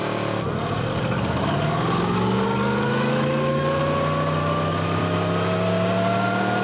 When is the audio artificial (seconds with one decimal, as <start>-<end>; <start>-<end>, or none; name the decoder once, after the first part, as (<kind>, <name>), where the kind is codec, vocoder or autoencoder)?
0.9-3.8 (codec, DAC); 4.4-5.0